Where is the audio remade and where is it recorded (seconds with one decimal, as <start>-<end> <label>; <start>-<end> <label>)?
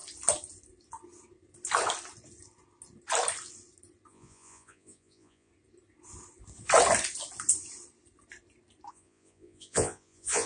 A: 0.0-4.1 recorded; 4.1-5.5 remade; 5.5-8.9 recorded; 8.9-10.5 remade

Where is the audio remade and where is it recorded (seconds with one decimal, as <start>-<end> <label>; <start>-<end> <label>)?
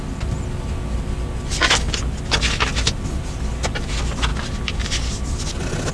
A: 0.0-5.9 recorded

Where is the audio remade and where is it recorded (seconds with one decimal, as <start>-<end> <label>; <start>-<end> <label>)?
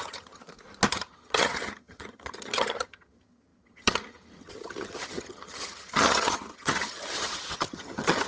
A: 0.0-0.4 remade; 0.4-0.9 recorded; 0.9-8.3 remade